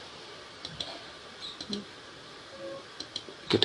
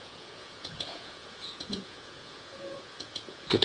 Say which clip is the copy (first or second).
second